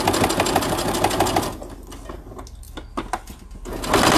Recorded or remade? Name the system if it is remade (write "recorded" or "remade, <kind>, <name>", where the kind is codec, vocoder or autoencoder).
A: recorded